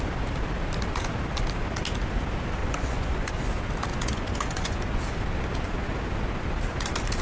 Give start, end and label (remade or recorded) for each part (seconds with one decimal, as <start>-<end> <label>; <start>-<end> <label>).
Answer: 0.0-2.6 recorded; 2.6-3.3 remade; 3.3-3.9 recorded; 3.9-5.0 remade; 5.0-7.2 recorded